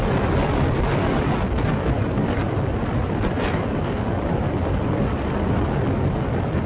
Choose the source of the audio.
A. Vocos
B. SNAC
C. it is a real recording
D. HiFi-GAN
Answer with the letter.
C